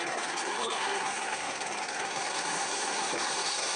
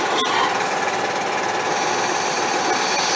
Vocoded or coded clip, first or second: first